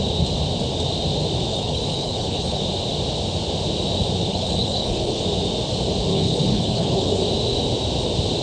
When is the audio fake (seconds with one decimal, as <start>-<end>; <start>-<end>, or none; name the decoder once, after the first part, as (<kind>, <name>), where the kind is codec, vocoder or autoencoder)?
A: 1.5-2.6 (codec, HILCodec); 4.2-5.2; 6.1-7.2